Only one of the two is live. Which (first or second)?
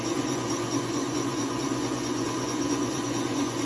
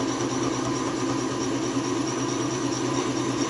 second